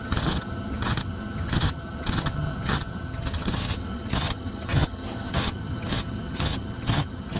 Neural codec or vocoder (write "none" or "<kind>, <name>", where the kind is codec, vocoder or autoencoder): vocoder, HiFi-GAN